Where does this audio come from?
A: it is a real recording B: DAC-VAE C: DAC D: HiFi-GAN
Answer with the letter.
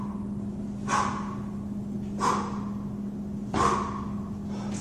A